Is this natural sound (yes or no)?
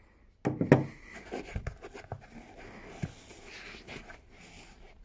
yes